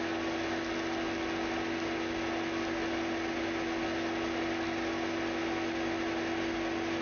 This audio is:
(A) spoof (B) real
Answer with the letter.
B